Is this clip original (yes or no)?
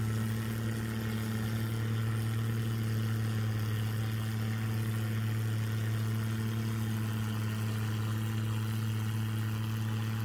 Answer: yes